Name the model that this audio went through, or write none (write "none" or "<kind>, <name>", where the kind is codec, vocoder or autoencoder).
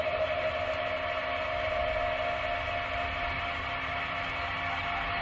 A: none